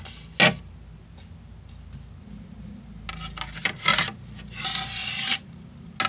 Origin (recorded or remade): recorded